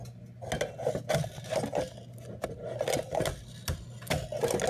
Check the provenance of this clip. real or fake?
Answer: real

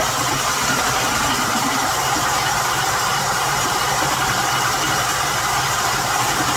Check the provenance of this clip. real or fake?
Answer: fake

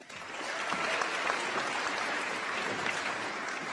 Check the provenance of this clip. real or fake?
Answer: fake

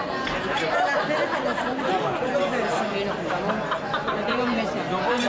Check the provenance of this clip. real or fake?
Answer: real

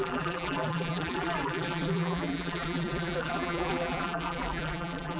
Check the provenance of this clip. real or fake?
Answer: fake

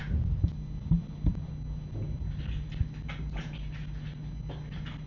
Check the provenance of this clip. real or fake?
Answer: real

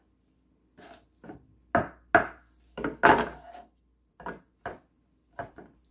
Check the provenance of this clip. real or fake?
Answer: real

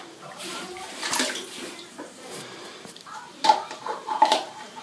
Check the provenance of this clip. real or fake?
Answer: fake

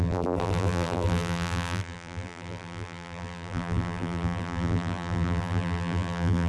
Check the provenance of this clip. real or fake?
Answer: fake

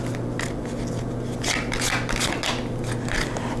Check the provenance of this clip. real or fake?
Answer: real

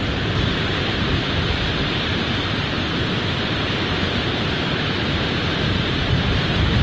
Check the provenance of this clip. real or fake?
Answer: fake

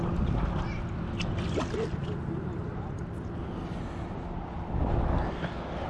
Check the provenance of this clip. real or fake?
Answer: real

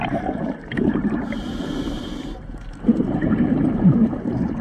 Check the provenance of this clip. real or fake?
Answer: fake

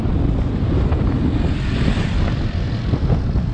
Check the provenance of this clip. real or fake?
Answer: real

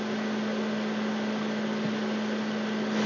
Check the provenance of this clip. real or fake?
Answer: real